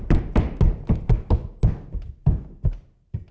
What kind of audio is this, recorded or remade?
recorded